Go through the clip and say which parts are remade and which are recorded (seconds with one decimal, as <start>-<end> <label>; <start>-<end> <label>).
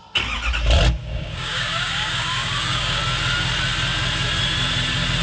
0.0-1.0 recorded; 1.0-3.0 remade; 3.0-5.2 recorded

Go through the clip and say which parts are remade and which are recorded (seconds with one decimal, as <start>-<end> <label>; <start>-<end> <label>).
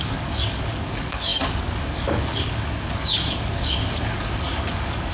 0.0-5.1 remade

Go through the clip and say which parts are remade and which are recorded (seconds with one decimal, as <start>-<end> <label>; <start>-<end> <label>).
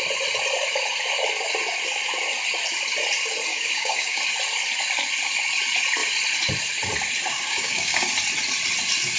0.0-3.5 recorded; 3.5-4.2 remade; 4.2-7.3 recorded; 7.3-8.1 remade; 8.1-9.2 recorded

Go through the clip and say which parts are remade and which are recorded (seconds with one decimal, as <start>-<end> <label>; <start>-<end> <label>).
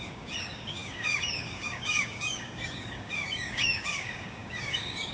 0.0-5.1 remade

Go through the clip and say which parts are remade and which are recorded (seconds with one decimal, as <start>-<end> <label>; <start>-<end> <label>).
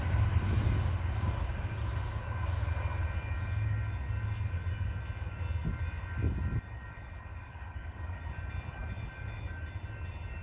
0.0-0.8 recorded; 0.8-2.0 remade; 2.0-7.3 recorded; 7.3-8.2 remade; 8.2-10.4 recorded